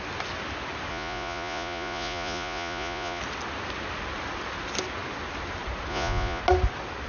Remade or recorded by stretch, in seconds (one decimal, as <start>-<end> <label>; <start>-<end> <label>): 0.0-0.9 recorded; 0.9-3.2 remade; 3.2-5.9 recorded; 5.9-6.4 remade; 6.4-7.1 recorded